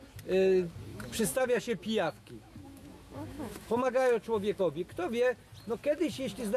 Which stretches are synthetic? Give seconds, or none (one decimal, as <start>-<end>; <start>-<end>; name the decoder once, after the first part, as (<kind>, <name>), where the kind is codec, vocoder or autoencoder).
0.9-4.6 (autoencoder, DAC-VAE)